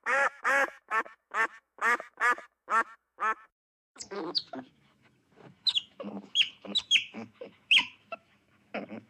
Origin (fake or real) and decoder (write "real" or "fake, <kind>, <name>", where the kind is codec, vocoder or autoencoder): fake, autoencoder, DAC-VAE